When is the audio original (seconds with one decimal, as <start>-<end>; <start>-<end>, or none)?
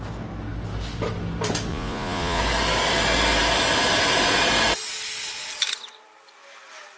0.0-1.7; 2.4-7.0